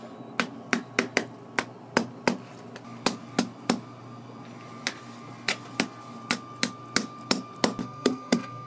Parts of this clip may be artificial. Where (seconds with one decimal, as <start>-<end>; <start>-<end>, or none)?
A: 7.8-8.7